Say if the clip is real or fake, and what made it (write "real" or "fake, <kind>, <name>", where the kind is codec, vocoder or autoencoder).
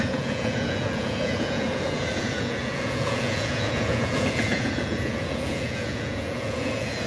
fake, vocoder, Vocos